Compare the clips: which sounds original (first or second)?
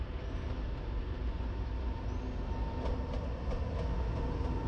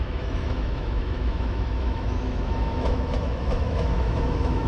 first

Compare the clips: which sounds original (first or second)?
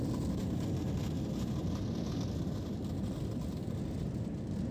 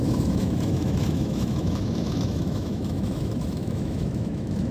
first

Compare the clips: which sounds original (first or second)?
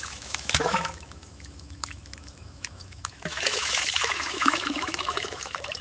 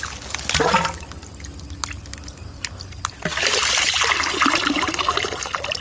second